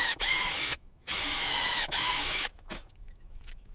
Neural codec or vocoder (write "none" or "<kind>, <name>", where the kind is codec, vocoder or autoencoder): autoencoder, DAC-VAE